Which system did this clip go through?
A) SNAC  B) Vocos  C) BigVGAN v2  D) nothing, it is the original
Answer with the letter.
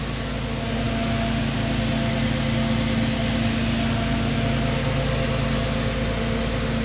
D